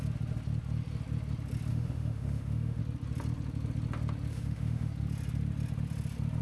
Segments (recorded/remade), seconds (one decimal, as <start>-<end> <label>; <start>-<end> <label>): 0.0-1.7 recorded; 1.7-2.8 remade; 2.8-4.3 recorded; 4.3-4.9 remade; 4.9-6.4 recorded